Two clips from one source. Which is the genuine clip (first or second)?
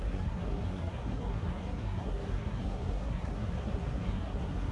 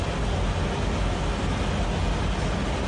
second